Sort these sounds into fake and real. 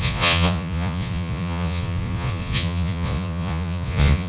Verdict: fake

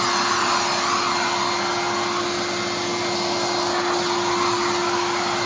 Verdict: real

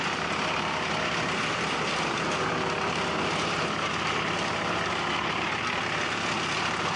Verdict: real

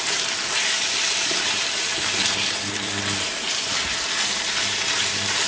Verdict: fake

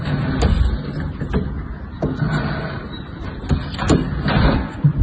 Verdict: real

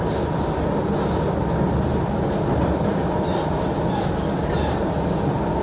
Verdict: real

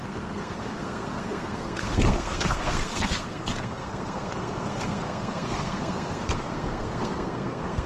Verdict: fake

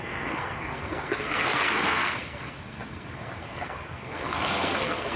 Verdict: fake